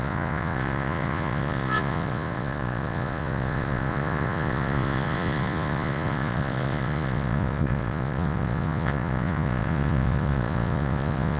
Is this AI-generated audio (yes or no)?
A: yes